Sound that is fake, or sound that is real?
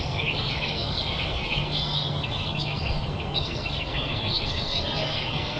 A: fake